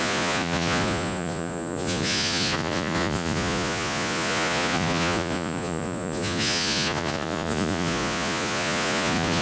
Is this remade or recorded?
remade